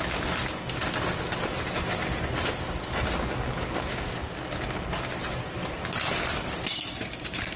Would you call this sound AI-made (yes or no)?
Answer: no